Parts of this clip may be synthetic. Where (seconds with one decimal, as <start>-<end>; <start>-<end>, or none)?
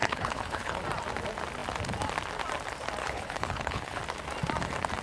0.0-0.8; 3.0-4.0